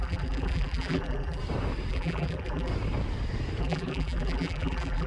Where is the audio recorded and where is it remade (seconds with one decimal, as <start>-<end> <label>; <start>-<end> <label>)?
0.0-1.4 remade; 1.4-1.9 recorded; 1.9-2.7 remade; 2.7-3.6 recorded; 3.6-5.1 remade